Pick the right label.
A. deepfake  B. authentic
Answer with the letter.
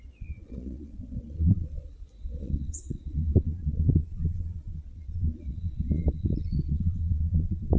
A